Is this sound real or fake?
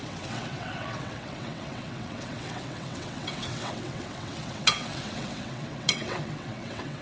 fake